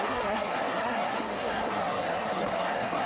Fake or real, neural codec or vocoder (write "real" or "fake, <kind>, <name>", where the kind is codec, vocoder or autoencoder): fake, codec, SNAC